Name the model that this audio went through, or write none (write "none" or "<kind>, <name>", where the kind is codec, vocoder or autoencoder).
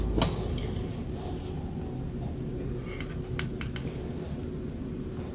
none